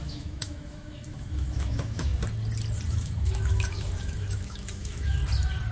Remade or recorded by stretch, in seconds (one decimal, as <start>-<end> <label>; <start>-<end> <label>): 0.0-2.1 remade; 2.1-2.9 recorded; 2.9-5.2 remade; 5.2-5.7 recorded